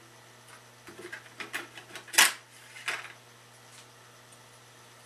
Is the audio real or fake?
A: real